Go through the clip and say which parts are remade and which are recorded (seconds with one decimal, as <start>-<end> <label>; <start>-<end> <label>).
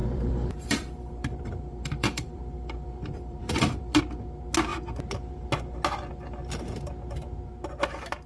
0.0-4.0 remade; 4.0-8.3 recorded